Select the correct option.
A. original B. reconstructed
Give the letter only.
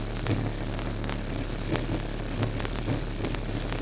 A